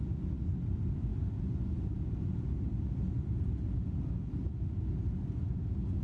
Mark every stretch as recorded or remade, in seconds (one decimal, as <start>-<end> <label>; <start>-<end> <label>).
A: 0.0-6.0 recorded

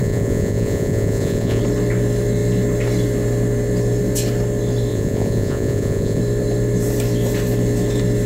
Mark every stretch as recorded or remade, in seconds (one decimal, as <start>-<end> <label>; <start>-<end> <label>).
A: 0.0-1.6 remade; 1.6-4.9 recorded; 4.9-6.2 remade; 6.2-8.3 recorded